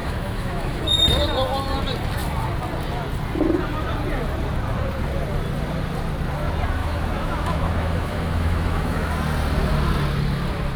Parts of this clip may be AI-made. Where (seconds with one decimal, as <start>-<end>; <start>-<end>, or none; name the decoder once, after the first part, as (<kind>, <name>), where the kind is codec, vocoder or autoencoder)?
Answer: 0.0-0.8 (autoencoder, DAC-VAE); 6.8-9.1